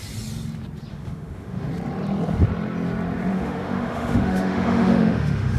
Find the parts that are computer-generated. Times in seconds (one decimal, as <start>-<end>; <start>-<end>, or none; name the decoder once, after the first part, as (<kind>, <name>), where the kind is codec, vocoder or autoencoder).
0.9-1.7 (autoencoder, DAC-VAE); 3.3-5.6